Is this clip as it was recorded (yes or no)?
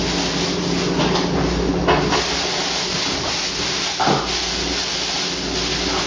yes